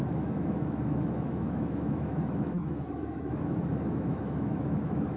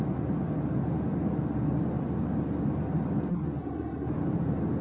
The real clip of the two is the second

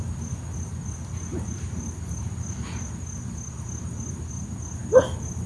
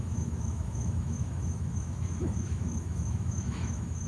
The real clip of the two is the first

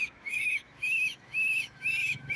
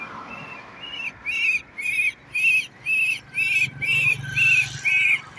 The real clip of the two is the second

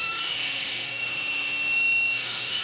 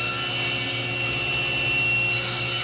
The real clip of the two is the second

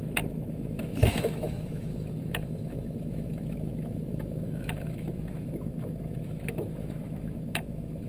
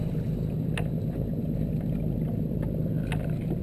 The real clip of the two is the second